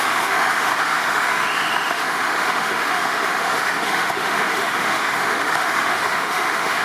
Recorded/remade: remade